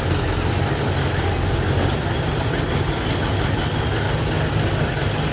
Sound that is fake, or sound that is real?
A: real